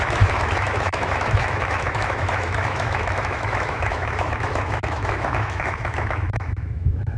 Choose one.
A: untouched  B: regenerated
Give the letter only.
B